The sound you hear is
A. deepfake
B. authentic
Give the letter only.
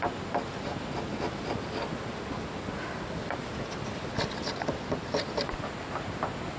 B